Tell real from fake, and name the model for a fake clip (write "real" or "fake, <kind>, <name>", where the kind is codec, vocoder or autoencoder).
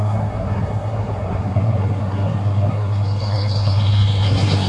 fake, codec, SNAC